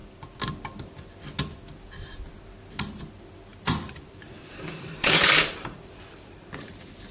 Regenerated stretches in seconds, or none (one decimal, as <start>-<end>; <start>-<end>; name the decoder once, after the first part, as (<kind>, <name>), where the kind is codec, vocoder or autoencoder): 0.0-0.5 (vocoder, BigVGAN v2); 3.5-7.1